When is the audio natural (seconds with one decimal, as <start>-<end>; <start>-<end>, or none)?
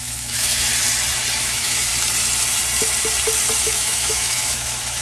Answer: 0.7-1.4; 1.9-3.6